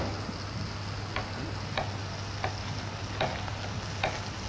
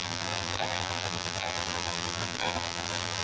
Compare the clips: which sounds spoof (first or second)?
second